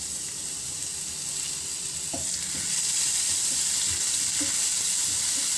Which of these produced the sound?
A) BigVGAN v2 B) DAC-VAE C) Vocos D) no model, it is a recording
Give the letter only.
D